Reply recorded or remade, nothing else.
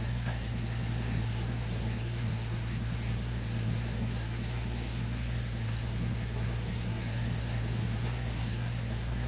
remade